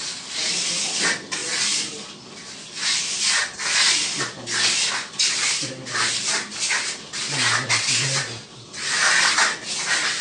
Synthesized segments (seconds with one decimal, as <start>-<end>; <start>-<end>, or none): none